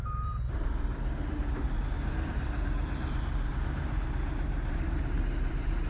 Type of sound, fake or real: fake